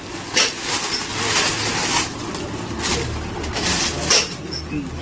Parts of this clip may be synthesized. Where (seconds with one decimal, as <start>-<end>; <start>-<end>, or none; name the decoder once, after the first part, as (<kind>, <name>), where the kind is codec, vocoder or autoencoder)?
none